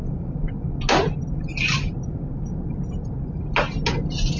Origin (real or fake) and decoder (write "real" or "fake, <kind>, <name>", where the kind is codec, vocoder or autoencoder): real